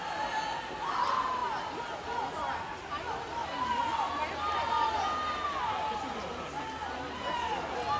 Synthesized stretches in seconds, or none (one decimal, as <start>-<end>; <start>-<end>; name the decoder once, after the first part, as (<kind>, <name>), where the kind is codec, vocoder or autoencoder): none